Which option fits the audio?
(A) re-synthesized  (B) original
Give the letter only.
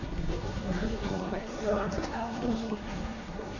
A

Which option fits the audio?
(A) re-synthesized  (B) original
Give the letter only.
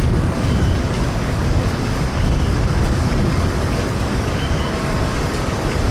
A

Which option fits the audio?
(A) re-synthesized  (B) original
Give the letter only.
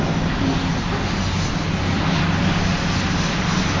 B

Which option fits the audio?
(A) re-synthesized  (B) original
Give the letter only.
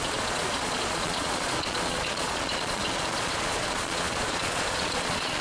A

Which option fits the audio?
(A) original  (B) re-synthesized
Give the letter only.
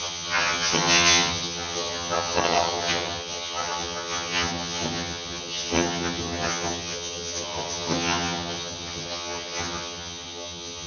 B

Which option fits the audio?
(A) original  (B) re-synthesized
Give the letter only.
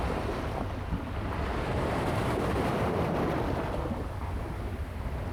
A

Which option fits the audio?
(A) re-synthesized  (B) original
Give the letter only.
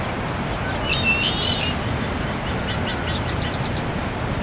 B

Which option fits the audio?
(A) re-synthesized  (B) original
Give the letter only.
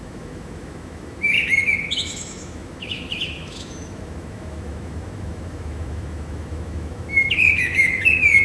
A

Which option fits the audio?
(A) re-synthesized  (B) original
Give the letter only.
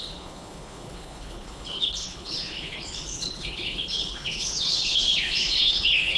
A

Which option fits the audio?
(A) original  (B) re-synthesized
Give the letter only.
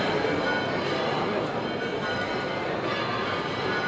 A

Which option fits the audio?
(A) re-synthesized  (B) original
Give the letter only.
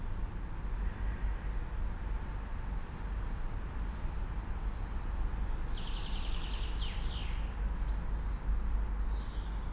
B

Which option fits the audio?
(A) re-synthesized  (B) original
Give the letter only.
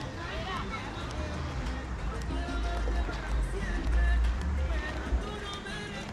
B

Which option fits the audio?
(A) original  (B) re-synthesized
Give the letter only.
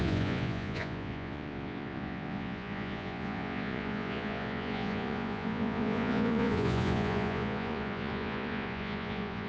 B